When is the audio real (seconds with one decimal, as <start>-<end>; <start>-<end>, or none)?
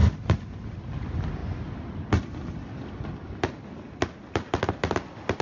0.0-5.4